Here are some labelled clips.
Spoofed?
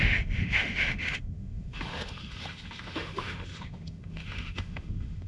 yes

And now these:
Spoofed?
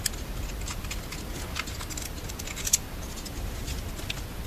no